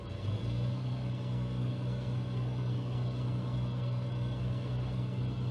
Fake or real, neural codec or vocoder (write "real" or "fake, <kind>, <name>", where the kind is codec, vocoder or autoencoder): fake, codec, SNAC